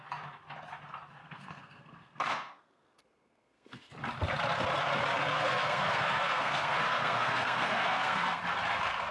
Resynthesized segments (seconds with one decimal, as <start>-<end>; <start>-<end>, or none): 1.2-3.9; 5.4-8.4